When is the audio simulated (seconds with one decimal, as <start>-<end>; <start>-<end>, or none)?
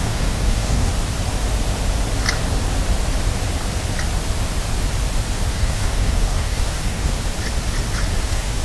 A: 0.0-0.9; 5.5-7.1; 8.2-8.6